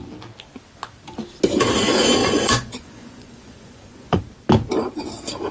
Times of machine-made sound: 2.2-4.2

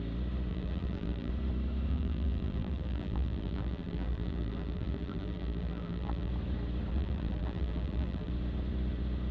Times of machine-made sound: 0.5-1.3; 1.9-6.3; 6.9-8.3

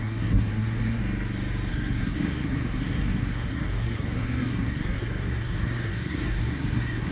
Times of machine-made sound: 0.0-1.0; 1.7-7.1

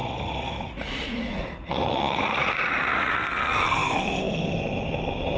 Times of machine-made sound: 0.0-3.2

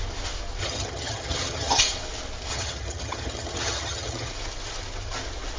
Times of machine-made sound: 0.6-1.8; 2.5-4.3

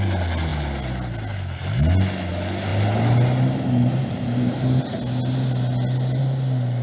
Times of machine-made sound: none

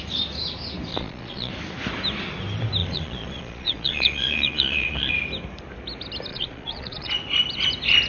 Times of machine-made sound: 0.9-1.5; 2.8-5.1; 6.3-7.1